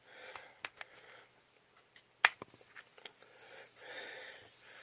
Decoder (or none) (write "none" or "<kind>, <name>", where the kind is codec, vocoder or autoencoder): none